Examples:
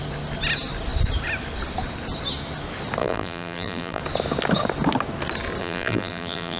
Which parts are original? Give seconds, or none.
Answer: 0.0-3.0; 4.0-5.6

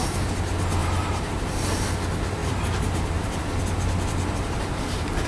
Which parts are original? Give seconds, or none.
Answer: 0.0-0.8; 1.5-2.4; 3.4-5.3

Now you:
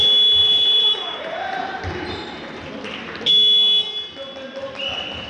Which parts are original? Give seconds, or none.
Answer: 0.0-0.4; 2.7-5.3

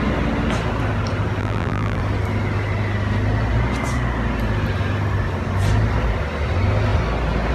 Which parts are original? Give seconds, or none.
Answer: 0.0-1.4; 2.0-7.5